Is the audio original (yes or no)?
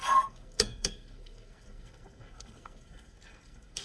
no